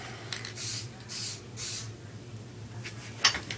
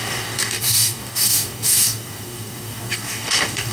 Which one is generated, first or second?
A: second